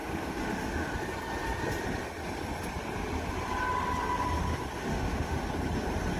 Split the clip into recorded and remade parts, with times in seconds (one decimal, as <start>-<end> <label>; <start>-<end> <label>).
0.0-0.9 remade; 0.9-4.8 recorded; 4.8-5.5 remade; 5.5-6.2 recorded